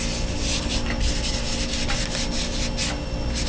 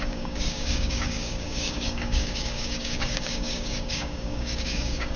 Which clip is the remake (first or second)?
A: second